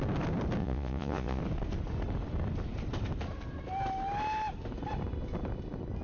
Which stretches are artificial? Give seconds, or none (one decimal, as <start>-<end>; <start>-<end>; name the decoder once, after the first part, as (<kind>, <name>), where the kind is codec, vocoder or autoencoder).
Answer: 0.6-1.4 (vocoder, Vocos)